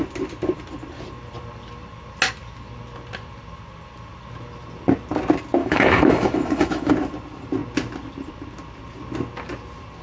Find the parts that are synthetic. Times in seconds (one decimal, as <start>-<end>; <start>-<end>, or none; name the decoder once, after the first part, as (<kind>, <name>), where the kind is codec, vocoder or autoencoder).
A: 5.6-6.9 (autoencoder, DAC-VAE)

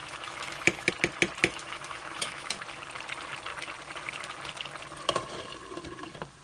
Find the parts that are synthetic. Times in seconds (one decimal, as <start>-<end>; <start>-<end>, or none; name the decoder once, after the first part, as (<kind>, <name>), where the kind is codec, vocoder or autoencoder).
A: 0.0-0.9 (autoencoder, DAC-VAE); 1.4-2.6

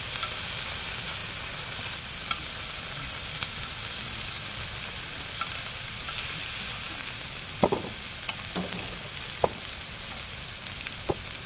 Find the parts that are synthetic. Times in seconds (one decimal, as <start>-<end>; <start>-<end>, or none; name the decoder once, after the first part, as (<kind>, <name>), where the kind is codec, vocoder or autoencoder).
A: none

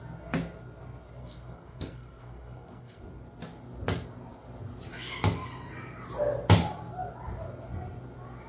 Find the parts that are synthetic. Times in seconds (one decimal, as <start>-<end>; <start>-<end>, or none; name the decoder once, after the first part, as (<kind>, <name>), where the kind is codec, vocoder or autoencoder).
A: 1.2-3.0 (codec, SNAC)

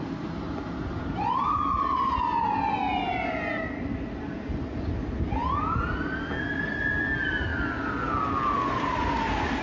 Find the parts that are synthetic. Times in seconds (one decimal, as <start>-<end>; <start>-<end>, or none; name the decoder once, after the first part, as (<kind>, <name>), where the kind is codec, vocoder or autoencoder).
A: none

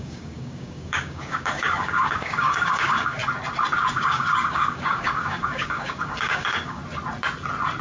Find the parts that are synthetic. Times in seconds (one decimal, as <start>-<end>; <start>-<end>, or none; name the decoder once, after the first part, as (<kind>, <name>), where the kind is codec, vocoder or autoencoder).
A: 0.0-3.2 (codec, DAC); 3.9-6.8